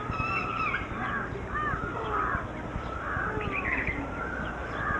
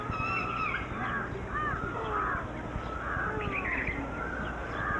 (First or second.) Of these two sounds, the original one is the second